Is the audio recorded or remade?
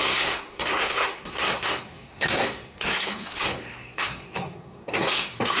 remade